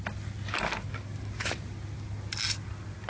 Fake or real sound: real